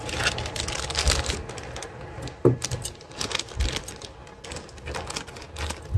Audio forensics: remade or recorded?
recorded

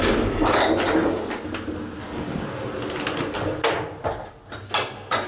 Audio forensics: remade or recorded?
recorded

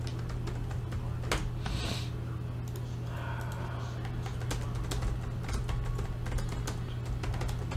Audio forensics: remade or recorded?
recorded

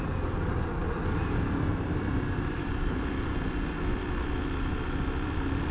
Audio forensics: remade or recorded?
recorded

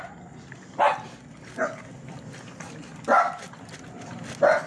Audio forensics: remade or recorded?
recorded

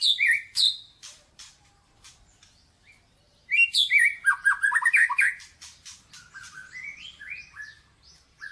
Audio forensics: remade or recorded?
remade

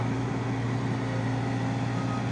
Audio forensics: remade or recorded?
recorded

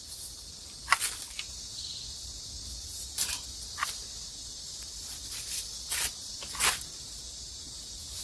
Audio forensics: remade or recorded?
recorded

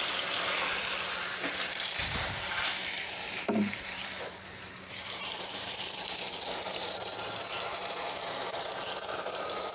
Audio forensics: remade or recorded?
remade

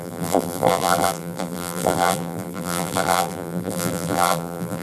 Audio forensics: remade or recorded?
remade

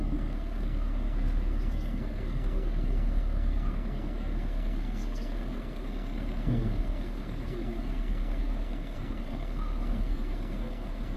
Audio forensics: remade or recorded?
remade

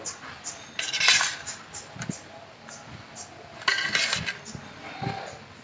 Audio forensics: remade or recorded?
recorded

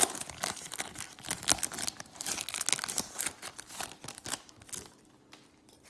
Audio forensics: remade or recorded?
recorded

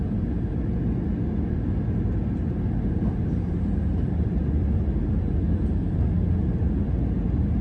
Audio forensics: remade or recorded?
recorded